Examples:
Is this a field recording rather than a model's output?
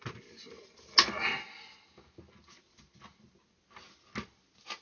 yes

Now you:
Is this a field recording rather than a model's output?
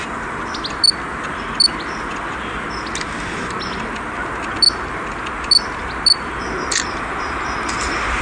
yes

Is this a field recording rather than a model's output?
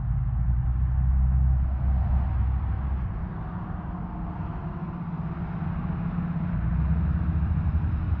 yes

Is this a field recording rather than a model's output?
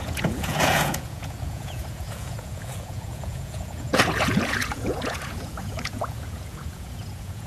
no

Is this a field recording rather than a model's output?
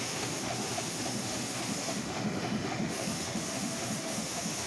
no